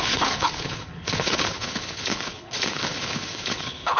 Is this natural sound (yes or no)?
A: no